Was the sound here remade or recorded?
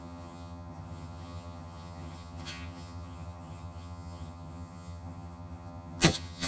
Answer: remade